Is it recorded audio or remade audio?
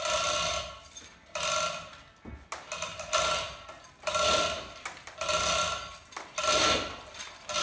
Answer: recorded